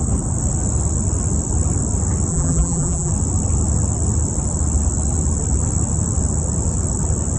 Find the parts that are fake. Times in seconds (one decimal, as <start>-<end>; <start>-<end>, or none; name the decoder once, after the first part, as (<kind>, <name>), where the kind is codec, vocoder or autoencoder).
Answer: 2.3-3.1 (vocoder, BigVGAN v2)